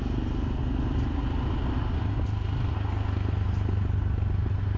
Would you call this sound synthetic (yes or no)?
no